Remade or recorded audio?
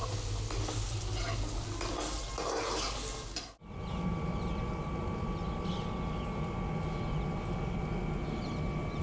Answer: recorded